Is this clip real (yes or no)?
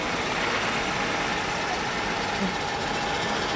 yes